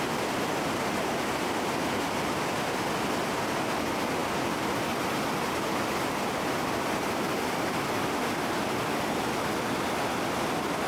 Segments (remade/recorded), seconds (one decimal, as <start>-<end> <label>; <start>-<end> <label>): 0.0-10.9 recorded